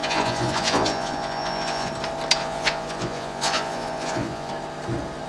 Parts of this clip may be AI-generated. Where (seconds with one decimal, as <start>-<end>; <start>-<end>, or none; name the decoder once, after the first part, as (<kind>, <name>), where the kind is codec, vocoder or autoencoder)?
0.0-1.9 (vocoder, Vocos); 2.4-4.5